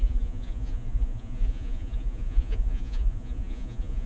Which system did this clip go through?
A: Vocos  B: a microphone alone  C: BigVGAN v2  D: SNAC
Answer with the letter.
A